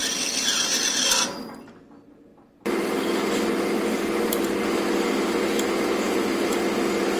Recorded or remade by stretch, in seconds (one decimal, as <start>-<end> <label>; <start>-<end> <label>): 0.0-7.2 recorded